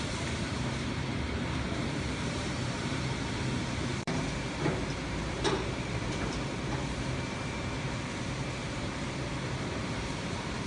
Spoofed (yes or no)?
yes